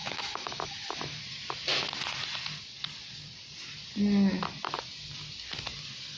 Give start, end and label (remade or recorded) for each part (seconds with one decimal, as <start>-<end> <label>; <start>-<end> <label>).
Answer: 0.0-1.2 remade; 1.2-6.2 recorded